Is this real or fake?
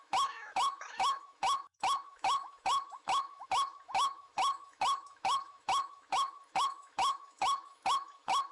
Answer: fake